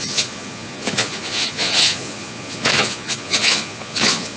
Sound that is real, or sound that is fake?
fake